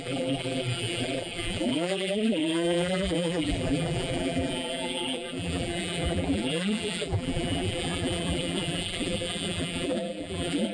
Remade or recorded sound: remade